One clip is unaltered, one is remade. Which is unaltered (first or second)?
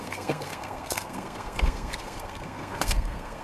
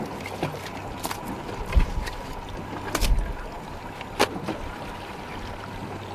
second